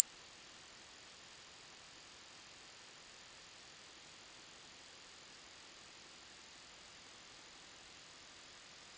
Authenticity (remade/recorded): recorded